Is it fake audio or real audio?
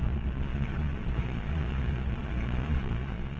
fake